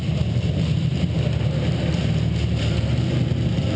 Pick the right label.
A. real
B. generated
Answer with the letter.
A